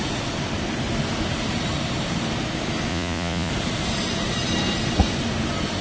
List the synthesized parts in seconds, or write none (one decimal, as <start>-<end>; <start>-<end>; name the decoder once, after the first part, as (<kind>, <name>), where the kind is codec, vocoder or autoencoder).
2.9-3.5 (vocoder, Vocos)